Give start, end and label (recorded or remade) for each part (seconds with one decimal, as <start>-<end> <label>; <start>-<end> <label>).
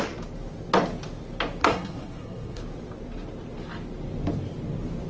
0.0-1.6 recorded; 1.6-2.6 remade; 2.6-5.1 recorded